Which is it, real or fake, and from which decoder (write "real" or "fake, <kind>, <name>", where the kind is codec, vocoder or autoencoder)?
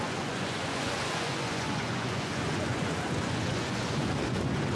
fake, vocoder, Vocos